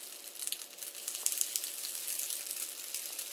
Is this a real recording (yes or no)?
yes